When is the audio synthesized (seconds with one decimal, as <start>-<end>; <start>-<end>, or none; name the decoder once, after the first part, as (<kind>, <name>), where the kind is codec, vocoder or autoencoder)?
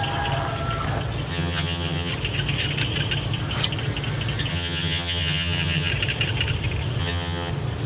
1.3-2.1 (vocoder, HiFi-GAN); 4.5-5.9; 7.0-7.5